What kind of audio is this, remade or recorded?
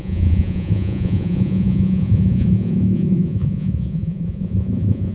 remade